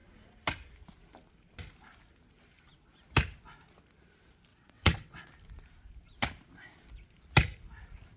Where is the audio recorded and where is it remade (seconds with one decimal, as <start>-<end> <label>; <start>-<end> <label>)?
0.0-4.5 recorded; 4.5-5.3 remade; 5.3-8.2 recorded